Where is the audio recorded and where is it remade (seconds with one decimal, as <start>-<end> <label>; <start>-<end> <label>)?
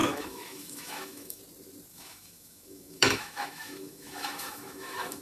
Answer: 0.0-1.4 remade; 1.4-1.9 recorded; 1.9-5.2 remade